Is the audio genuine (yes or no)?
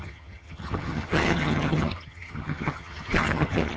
no